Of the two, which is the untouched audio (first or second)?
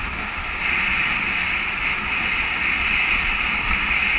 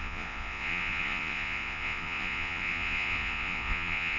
first